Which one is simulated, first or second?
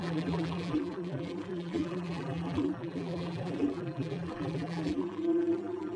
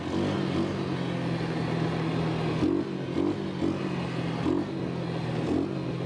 first